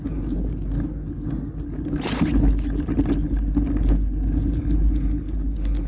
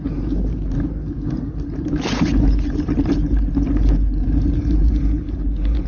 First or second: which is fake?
second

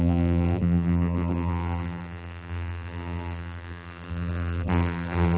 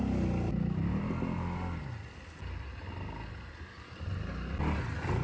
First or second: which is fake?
first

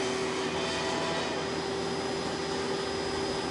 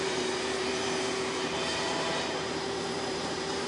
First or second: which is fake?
second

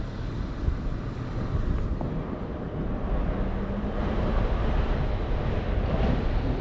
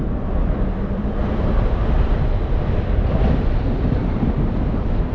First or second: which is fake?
second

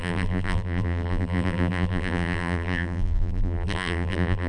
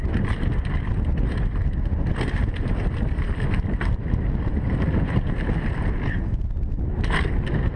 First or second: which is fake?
first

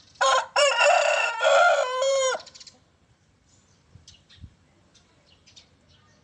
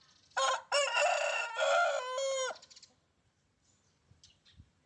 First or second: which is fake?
first